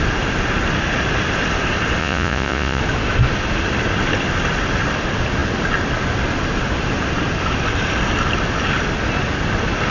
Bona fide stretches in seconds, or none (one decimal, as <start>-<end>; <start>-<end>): 0.0-2.0; 2.8-9.9